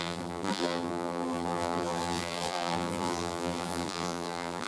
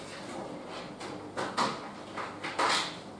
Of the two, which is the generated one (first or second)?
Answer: first